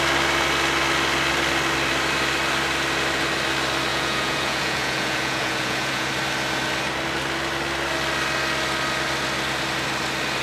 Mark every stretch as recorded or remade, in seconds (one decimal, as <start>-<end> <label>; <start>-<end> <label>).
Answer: 0.0-3.9 recorded; 3.9-6.1 remade; 6.1-10.4 recorded